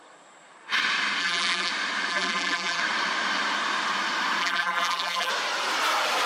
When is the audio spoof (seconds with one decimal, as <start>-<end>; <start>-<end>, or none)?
1.2-1.7; 2.1-2.8; 4.4-5.3